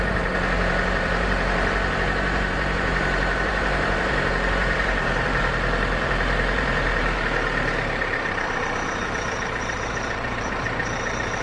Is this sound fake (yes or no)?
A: yes